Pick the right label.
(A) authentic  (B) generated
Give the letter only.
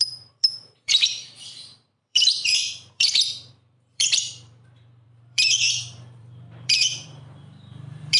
B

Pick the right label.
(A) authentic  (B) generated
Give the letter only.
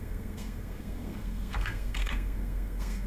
B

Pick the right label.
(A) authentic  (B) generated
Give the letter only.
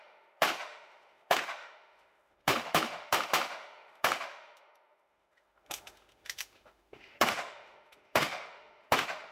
B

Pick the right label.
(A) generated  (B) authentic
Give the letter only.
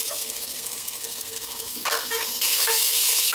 A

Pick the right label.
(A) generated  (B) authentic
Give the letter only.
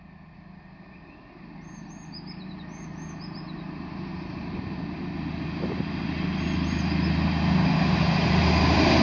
B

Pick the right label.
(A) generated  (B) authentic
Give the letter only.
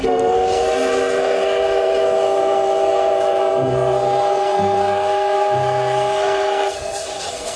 A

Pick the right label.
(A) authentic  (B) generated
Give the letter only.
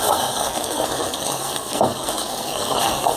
B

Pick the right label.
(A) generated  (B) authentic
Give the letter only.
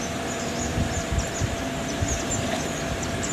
B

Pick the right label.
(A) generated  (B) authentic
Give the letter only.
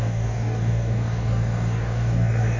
A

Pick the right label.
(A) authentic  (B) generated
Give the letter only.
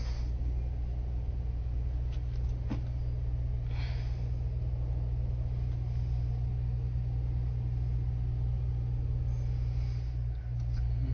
A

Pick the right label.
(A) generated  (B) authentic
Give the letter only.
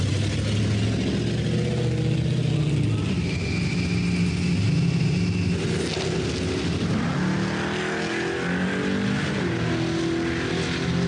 B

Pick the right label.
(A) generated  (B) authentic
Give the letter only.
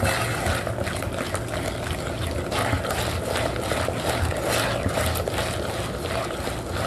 B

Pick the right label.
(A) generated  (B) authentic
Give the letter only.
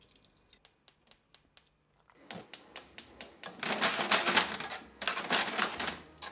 B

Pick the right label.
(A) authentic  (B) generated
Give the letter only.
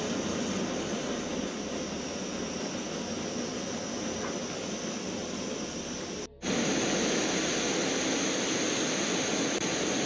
A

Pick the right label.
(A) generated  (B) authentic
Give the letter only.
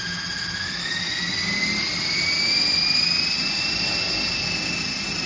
B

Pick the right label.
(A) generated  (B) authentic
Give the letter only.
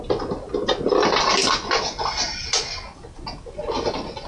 B